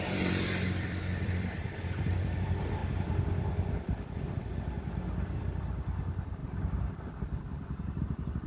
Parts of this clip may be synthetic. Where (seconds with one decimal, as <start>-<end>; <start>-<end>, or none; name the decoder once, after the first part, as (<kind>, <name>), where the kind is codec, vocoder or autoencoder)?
0.0-6.4 (vocoder, BigVGAN v2); 8.0-8.5